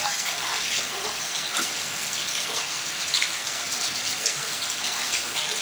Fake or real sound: fake